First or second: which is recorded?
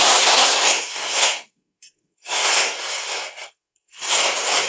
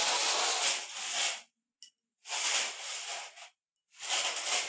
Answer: second